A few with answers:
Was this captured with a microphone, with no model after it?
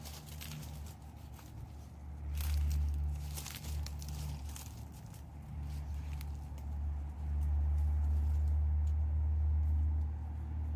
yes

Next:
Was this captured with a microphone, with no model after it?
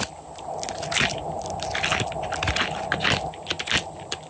yes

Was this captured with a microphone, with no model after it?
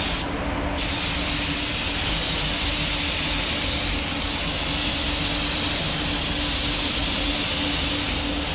yes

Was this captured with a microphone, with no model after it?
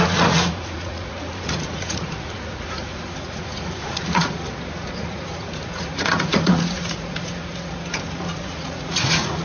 no